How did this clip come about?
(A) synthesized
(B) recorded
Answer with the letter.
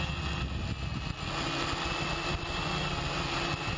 B